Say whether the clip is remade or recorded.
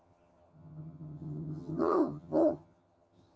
remade